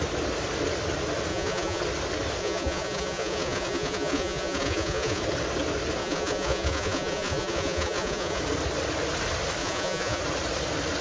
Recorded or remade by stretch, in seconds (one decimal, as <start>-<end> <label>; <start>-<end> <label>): 0.0-1.3 recorded; 1.3-1.8 remade; 1.8-2.4 recorded; 2.4-5.2 remade; 5.2-6.0 recorded; 6.0-8.4 remade; 8.4-9.6 recorded; 9.6-10.2 remade; 10.2-11.0 recorded